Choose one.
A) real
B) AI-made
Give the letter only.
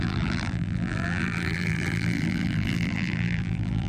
B